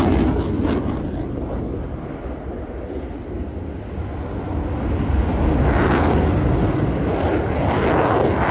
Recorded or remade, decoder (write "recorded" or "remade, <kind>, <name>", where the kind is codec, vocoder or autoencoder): recorded